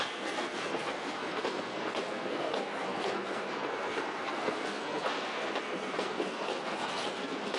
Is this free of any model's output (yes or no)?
no